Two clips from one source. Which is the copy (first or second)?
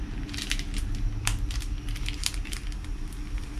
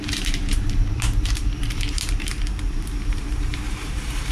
second